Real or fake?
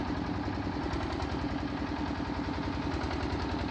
real